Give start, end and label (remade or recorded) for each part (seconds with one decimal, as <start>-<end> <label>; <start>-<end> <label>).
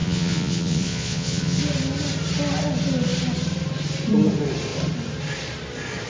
0.0-1.6 remade; 1.6-6.1 recorded